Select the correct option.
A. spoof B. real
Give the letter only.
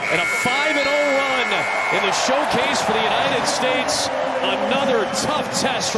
B